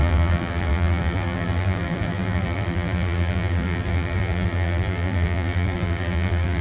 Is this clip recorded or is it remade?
remade